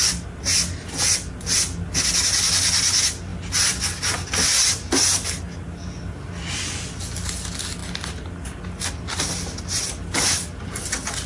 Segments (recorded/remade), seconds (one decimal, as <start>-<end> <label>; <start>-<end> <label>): 0.0-11.3 recorded